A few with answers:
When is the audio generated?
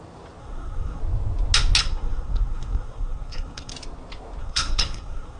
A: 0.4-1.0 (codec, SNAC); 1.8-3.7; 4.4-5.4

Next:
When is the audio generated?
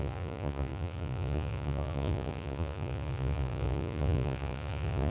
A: 0.0-5.1 (vocoder, Vocos)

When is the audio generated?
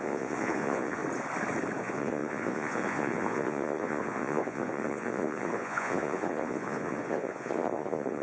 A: 0.0-1.0 (vocoder, Vocos); 1.8-8.2